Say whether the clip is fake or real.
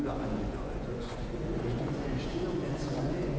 fake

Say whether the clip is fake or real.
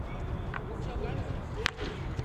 real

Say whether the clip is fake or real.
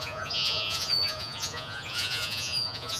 fake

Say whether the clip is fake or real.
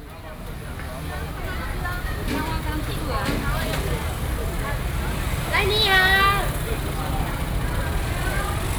real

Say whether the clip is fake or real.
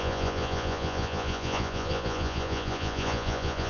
fake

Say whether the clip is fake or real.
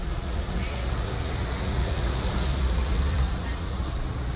fake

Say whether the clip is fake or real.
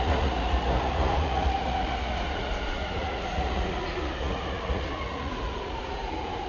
fake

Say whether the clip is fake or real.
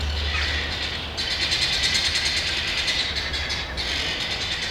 real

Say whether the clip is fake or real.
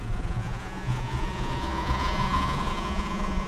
fake